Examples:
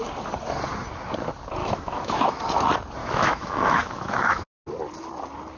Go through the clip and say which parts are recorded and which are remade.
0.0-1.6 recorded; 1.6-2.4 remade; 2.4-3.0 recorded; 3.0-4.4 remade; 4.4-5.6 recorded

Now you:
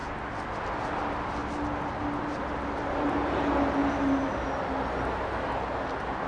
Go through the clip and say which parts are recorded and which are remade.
0.0-6.3 recorded

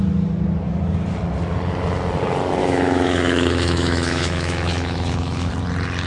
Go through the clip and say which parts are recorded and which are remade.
0.0-2.6 recorded; 2.6-5.5 remade; 5.5-6.1 recorded

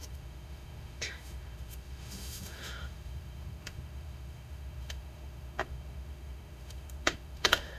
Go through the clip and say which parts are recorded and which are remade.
0.0-7.8 remade

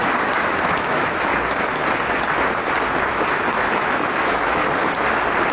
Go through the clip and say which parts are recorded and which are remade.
0.0-1.3 remade; 1.3-3.1 recorded; 3.1-4.6 remade; 4.6-5.5 recorded

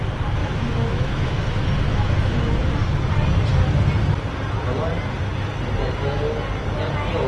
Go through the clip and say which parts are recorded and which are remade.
0.0-0.4 recorded; 0.4-1.5 remade; 1.5-1.9 recorded; 1.9-2.6 remade; 2.6-7.3 recorded